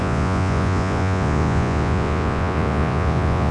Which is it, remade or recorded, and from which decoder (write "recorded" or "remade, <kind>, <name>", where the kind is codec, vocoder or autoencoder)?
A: remade, vocoder, Vocos